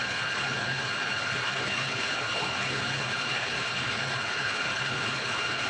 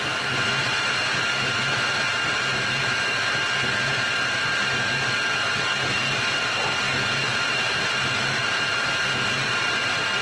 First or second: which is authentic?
second